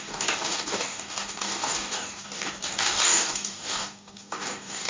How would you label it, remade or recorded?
remade